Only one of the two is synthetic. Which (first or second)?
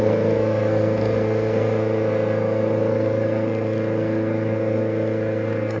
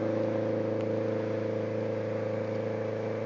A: first